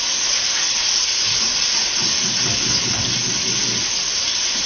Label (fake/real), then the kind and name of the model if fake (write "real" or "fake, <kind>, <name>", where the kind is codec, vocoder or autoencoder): real